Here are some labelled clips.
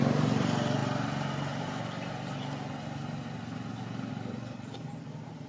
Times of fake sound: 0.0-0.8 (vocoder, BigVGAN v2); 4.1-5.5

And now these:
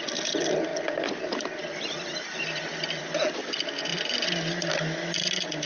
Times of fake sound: none